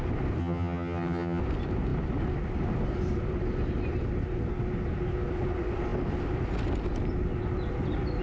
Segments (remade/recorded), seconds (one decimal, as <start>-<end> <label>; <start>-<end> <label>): 0.0-0.4 recorded; 0.4-1.4 remade; 1.4-8.2 recorded